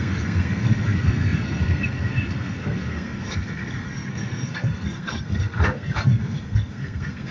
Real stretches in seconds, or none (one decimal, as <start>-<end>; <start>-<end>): none